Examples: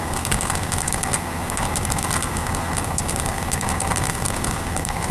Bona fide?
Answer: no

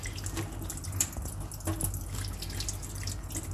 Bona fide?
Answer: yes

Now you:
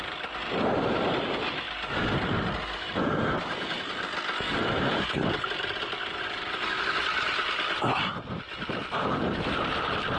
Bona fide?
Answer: yes